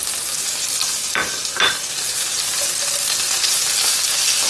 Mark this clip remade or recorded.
recorded